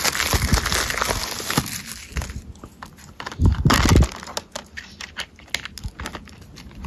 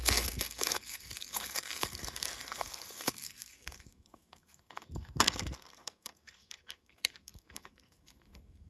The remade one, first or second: second